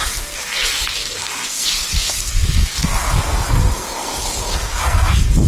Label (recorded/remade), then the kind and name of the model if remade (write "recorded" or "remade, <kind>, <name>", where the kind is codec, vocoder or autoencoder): remade, codec, SNAC